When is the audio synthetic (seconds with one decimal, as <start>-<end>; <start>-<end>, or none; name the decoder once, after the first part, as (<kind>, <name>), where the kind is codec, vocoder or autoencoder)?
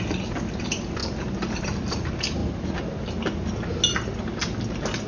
none